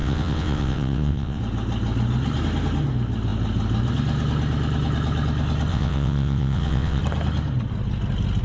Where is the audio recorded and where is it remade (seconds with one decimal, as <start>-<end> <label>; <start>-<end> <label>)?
0.0-1.4 remade; 1.4-5.7 recorded; 5.7-7.0 remade; 7.0-8.4 recorded